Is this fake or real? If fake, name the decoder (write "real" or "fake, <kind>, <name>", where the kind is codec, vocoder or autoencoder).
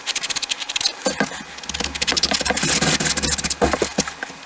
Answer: real